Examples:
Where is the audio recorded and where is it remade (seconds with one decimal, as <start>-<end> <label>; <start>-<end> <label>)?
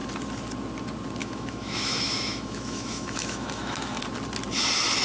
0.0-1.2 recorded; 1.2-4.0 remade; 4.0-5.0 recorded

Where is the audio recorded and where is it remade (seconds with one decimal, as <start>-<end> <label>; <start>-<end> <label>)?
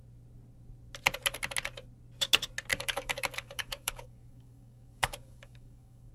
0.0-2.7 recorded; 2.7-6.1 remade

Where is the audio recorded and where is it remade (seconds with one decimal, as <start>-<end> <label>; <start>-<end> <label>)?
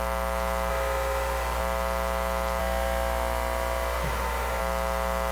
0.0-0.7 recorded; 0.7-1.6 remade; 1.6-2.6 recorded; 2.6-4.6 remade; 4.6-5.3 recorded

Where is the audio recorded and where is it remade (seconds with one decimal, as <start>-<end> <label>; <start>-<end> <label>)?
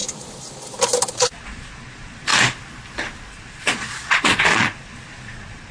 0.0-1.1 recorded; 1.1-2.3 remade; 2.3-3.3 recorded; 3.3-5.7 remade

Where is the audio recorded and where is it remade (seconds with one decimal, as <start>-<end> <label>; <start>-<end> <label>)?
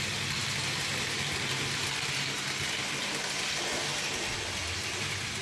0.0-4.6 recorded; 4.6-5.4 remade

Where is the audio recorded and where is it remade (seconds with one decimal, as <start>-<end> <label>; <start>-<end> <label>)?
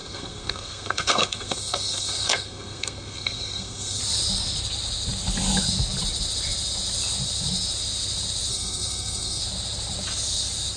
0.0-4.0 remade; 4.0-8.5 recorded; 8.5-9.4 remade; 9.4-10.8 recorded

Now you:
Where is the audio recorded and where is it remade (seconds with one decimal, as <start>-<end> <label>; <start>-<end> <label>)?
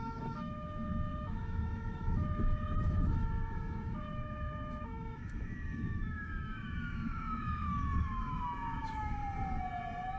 0.0-9.2 remade; 9.2-10.2 recorded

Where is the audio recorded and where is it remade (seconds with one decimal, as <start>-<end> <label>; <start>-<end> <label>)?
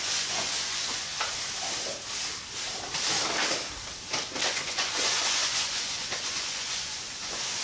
0.0-1.1 remade; 1.1-4.5 recorded; 4.5-7.6 remade